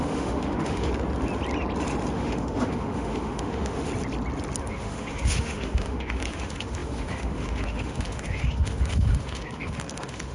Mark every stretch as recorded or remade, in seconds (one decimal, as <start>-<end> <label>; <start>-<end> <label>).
0.0-0.9 remade; 0.9-2.1 recorded; 2.1-3.9 remade; 3.9-4.6 recorded; 4.6-10.3 remade